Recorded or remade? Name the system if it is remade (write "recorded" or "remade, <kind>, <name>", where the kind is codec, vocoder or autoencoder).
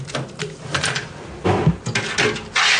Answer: recorded